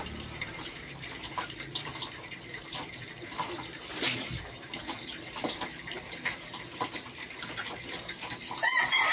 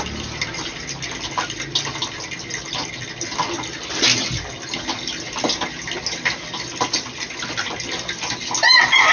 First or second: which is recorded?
second